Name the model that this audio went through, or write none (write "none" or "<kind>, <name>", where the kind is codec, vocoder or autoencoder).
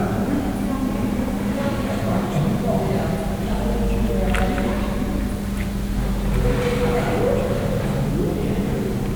none